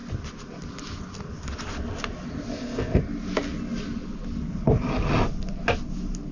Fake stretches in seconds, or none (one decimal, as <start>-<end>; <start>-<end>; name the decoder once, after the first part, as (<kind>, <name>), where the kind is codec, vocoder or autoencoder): 2.5-3.0 (codec, ZipCodec)

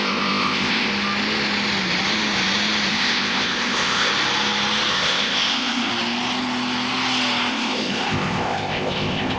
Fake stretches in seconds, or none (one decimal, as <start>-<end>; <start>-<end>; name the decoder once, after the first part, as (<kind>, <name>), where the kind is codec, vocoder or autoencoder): 0.0-0.9 (codec, ZipCodec); 2.9-4.1; 4.9-5.9; 7.5-9.4